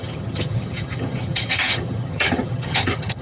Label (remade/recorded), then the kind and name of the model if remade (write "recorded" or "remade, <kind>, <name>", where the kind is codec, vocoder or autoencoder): remade, vocoder, HiFi-GAN